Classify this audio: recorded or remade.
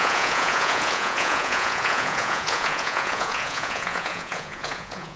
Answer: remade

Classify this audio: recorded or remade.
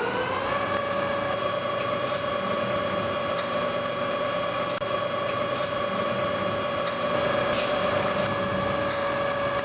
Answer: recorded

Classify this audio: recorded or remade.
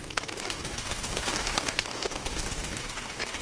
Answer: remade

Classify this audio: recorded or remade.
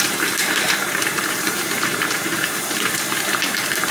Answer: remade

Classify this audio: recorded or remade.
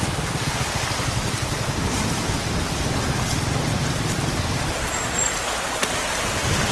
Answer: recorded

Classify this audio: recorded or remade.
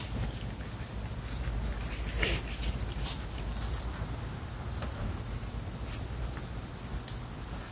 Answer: recorded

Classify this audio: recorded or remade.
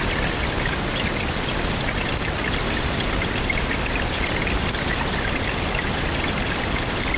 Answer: recorded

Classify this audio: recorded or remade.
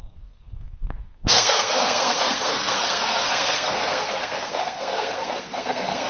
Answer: remade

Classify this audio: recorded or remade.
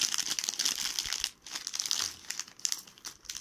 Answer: recorded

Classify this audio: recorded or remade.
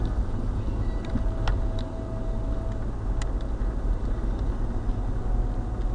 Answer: recorded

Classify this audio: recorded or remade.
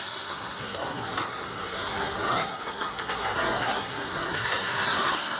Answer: remade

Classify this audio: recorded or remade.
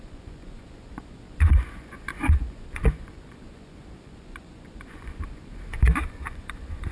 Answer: remade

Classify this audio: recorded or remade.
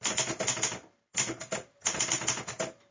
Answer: recorded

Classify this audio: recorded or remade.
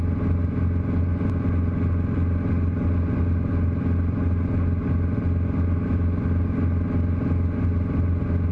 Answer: recorded